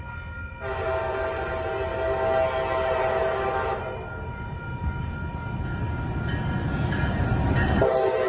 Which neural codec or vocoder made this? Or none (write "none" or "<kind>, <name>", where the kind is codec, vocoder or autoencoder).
none